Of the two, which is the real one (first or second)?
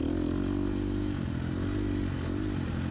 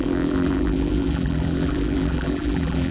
first